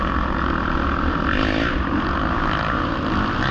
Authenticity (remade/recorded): recorded